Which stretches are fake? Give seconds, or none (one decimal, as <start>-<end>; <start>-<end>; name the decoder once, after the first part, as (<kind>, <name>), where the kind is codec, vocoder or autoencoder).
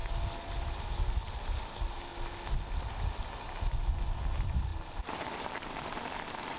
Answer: 0.5-2.1 (vocoder, BigVGAN v2); 4.2-4.7; 5.4-6.6